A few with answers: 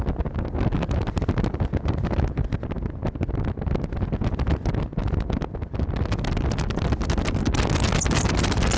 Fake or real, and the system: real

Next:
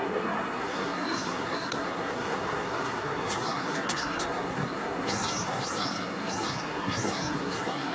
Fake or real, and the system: fake, codec, SNAC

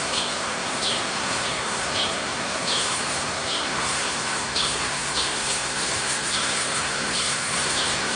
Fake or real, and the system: fake, codec, SNAC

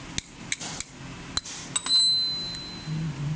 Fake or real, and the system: real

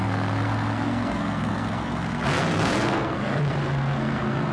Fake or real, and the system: fake, codec, SNAC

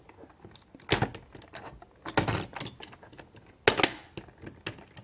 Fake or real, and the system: real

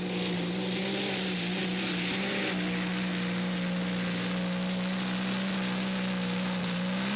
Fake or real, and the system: real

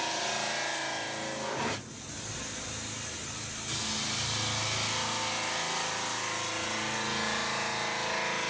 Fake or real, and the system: real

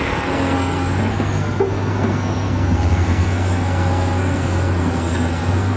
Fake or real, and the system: fake, codec, SNAC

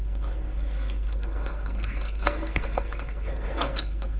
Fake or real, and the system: fake, codec, SNAC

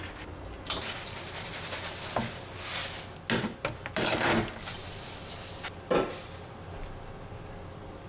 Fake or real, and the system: real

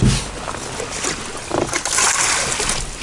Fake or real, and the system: real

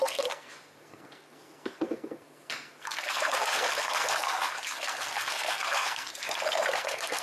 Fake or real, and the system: fake, codec, SNAC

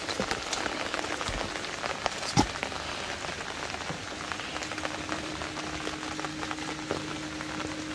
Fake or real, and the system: real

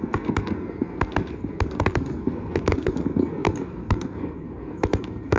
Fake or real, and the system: fake, codec, SNAC